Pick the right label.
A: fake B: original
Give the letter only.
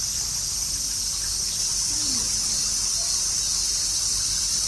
B